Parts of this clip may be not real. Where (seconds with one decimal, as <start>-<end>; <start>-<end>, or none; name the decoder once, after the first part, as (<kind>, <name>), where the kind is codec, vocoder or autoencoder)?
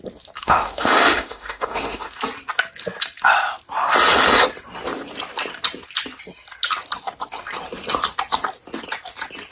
0.4-2.2 (autoencoder, DAC-VAE)